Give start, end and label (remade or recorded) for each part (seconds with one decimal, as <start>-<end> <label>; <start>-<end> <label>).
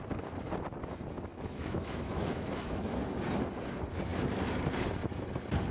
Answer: 0.0-1.3 recorded; 1.3-3.0 remade; 3.0-5.7 recorded